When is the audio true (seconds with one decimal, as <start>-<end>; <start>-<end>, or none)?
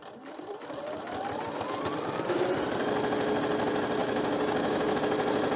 0.0-4.0; 5.0-5.6